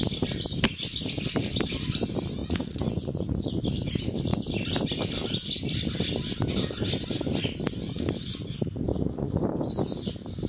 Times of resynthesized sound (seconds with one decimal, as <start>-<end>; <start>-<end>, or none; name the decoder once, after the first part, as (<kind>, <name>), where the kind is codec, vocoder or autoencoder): 2.4-3.5 (vocoder, Vocos); 8.9-9.4